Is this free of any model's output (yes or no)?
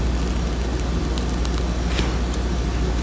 yes